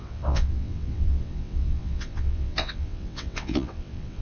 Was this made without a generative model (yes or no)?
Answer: no